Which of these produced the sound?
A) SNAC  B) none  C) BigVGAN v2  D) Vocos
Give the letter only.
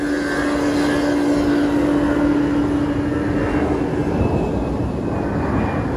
B